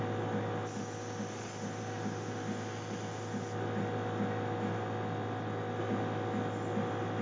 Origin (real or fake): real